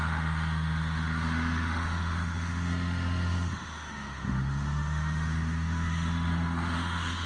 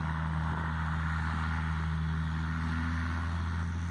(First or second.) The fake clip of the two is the first